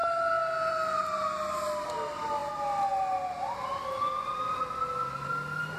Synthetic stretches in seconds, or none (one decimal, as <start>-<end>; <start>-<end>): none